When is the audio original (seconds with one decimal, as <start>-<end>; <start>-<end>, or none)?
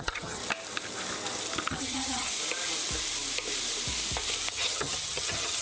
0.4-1.7; 2.3-4.5